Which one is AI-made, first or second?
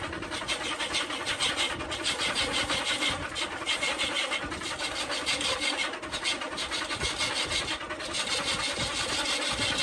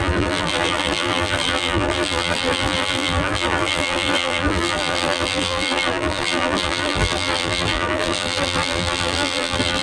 second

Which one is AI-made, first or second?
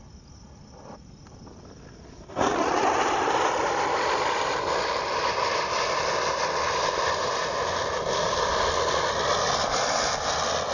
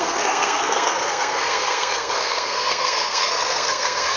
second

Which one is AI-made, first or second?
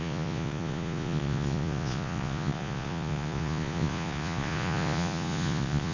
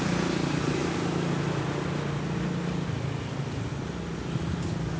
first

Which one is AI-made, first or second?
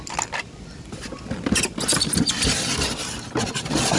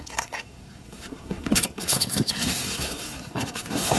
second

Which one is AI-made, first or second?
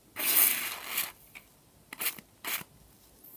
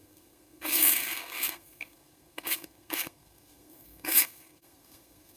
second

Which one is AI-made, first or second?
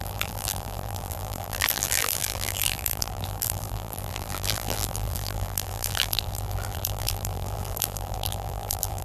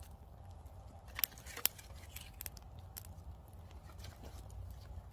first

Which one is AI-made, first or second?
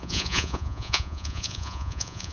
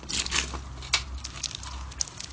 first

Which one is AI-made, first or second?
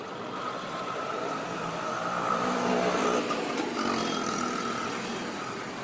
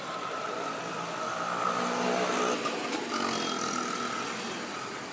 first